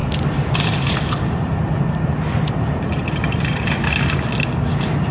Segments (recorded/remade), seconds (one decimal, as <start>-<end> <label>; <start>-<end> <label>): 0.0-5.1 recorded